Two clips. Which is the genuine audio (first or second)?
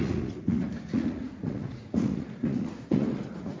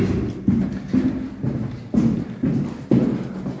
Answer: second